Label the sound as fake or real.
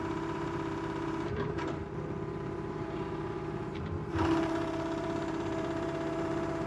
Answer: fake